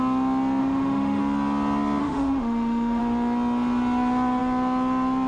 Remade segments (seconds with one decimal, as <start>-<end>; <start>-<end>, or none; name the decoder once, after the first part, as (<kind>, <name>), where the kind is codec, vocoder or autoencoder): 0.6-1.2 (autoencoder, DAC-VAE); 2.0-3.0